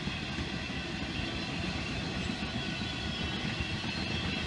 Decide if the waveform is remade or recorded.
recorded